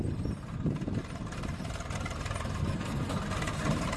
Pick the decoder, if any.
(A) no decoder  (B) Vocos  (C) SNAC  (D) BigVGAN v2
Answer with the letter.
A